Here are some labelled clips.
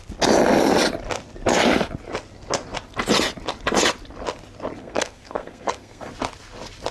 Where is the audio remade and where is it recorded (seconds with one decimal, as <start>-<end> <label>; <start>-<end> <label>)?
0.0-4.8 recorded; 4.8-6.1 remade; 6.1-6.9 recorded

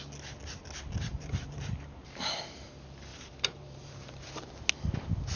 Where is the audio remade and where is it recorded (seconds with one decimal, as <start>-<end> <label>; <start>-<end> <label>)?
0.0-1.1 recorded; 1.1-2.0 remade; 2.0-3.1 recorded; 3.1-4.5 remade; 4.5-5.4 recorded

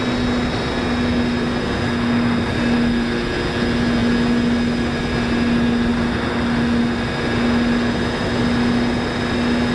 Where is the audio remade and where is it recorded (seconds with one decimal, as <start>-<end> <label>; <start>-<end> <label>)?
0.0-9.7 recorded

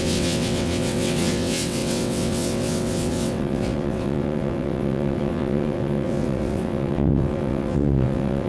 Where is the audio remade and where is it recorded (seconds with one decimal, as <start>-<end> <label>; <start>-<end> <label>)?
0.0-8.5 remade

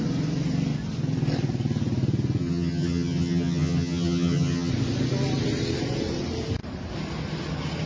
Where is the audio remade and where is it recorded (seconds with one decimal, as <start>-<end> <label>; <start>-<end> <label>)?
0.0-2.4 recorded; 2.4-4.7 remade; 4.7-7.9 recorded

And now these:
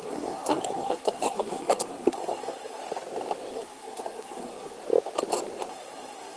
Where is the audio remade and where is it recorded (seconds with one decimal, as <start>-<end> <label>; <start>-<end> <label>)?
0.0-2.8 remade; 2.8-3.5 recorded; 3.5-4.8 remade; 4.8-5.7 recorded; 5.7-6.4 remade

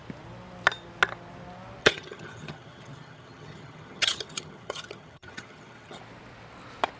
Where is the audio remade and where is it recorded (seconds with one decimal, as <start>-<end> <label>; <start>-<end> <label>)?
0.0-1.8 recorded; 1.8-6.0 remade; 6.0-7.0 recorded

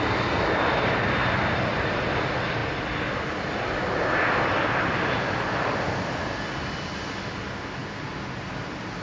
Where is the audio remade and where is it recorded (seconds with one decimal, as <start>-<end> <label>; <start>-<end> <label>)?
0.0-9.0 recorded